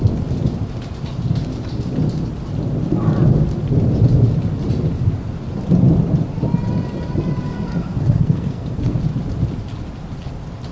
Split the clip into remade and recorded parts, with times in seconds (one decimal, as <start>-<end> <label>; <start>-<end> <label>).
0.0-7.5 recorded; 7.5-9.0 remade; 9.0-10.7 recorded